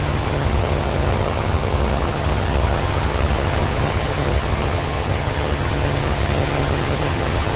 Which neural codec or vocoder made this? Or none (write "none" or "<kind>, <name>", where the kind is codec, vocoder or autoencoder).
vocoder, HiFi-GAN